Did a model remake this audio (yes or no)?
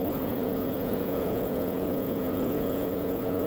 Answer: yes